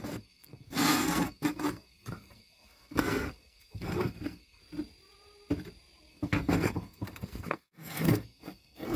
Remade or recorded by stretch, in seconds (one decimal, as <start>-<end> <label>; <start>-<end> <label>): 0.0-4.6 remade; 4.6-6.1 recorded; 6.1-9.0 remade